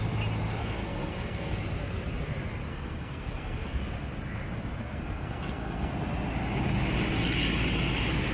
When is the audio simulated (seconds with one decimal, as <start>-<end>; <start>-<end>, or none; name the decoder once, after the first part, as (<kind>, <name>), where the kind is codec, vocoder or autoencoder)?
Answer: 0.6-1.6 (codec, SNAC); 2.7-3.8; 4.8-5.9